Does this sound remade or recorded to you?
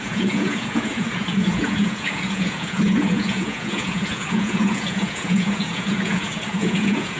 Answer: remade